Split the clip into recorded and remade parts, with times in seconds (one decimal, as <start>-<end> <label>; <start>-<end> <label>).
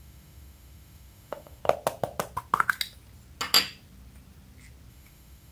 0.0-1.6 remade; 1.6-4.9 recorded; 4.9-5.5 remade